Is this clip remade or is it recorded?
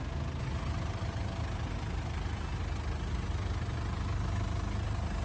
recorded